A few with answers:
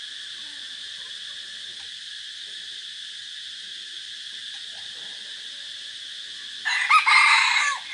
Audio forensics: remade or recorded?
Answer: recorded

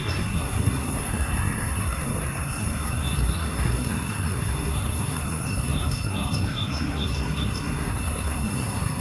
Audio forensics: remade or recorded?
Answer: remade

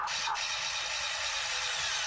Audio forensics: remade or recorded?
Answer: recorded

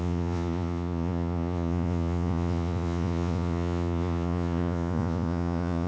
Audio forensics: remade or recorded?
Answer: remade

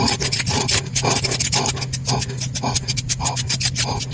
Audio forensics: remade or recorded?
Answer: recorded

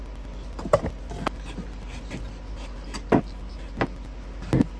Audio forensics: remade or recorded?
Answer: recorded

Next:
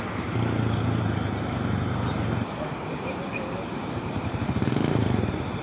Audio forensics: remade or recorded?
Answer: remade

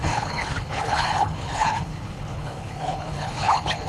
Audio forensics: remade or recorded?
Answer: remade